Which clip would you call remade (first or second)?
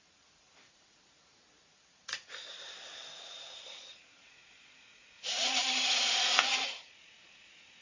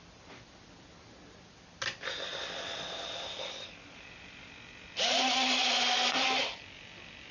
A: first